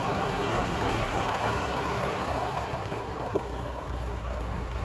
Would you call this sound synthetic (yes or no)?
yes